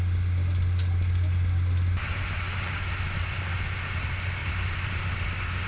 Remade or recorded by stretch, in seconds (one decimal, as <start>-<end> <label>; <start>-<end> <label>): 0.0-5.7 recorded